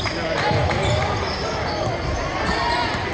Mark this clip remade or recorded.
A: recorded